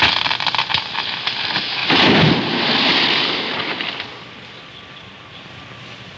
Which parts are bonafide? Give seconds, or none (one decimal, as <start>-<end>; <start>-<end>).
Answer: 0.0-6.2